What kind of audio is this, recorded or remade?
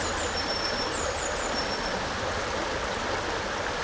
remade